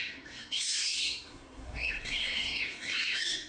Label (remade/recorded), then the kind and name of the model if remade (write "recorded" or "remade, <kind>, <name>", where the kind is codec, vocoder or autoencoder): remade, codec, SNAC